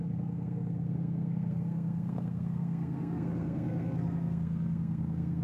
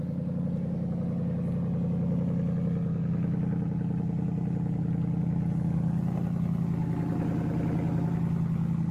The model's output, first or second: first